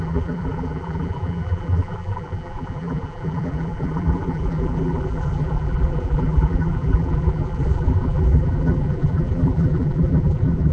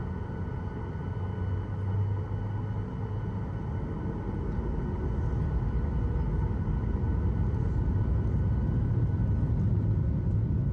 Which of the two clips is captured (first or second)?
second